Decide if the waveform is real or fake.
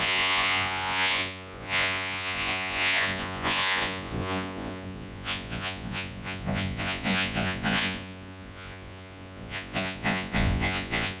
fake